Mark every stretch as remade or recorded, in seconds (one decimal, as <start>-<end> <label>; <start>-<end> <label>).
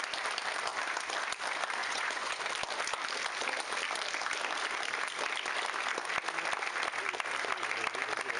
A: 0.0-1.8 recorded; 1.8-2.4 remade; 2.4-8.4 recorded